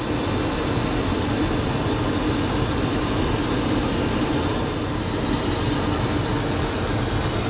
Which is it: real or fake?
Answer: real